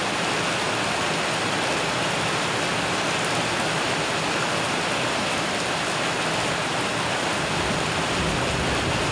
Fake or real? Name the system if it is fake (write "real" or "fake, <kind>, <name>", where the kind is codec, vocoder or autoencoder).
real